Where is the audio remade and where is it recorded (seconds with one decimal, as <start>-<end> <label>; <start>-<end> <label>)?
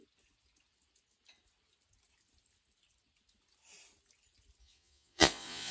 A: 0.0-4.6 recorded; 4.6-5.7 remade